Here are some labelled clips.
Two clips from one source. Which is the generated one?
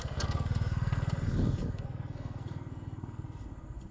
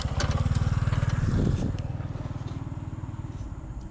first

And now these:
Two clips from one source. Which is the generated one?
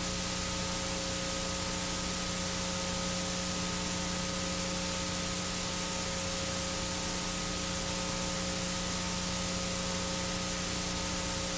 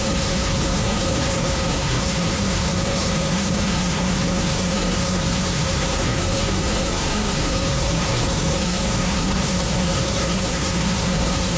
second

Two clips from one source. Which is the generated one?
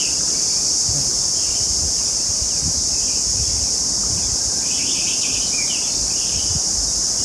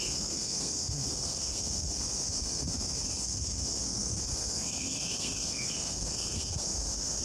second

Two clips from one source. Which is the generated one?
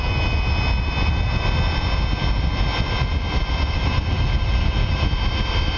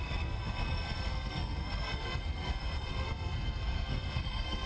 second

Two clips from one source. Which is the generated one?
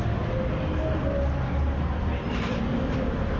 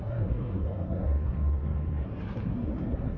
second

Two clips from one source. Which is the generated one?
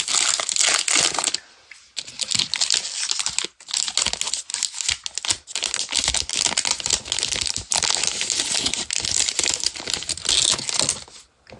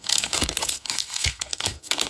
second